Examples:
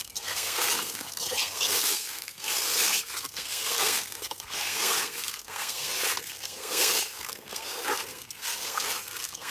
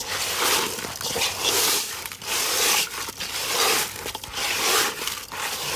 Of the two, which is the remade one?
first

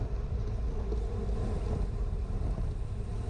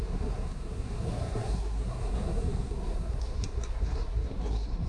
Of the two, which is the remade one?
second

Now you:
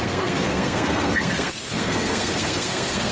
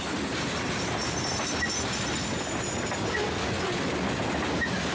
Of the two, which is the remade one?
first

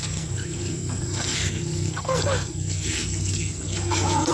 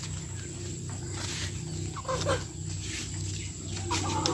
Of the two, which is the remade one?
first